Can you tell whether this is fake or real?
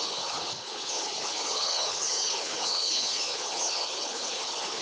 fake